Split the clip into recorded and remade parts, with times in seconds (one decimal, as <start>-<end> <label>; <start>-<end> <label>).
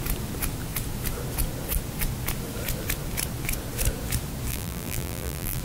0.0-4.5 recorded; 4.5-5.6 remade